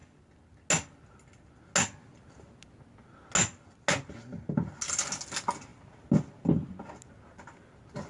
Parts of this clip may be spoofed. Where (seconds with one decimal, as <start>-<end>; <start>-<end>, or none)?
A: none